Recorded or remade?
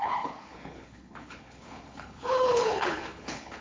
remade